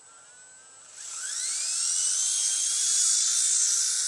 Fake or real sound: real